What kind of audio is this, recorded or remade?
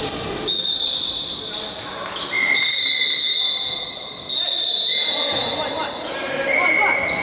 recorded